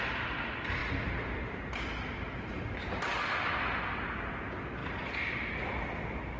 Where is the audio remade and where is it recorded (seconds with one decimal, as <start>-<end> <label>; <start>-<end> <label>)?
0.0-6.4 recorded